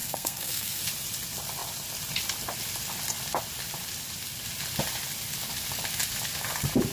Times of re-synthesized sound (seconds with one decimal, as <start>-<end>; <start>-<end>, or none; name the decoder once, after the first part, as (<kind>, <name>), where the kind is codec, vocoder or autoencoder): 0.0-0.8 (codec, SNAC)